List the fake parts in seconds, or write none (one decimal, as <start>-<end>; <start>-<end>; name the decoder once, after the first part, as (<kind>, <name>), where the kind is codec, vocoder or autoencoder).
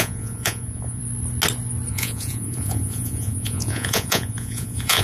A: 0.0-1.0 (vocoder, Vocos); 1.9-5.0